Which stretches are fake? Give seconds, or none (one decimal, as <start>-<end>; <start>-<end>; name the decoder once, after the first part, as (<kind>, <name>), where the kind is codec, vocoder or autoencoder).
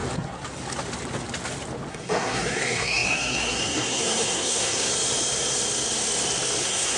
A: 1.9-4.9 (codec, SNAC); 6.6-7.0